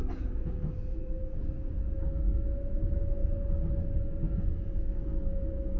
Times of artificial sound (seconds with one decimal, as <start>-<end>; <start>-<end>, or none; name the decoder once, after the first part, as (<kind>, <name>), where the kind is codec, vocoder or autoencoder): 0.0-3.2 (autoencoder, DAC-VAE); 4.5-5.8